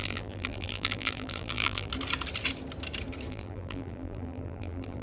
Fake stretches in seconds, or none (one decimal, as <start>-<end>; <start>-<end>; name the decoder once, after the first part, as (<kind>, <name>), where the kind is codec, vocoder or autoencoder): 0.0-1.9 (vocoder, BigVGAN v2); 3.3-5.0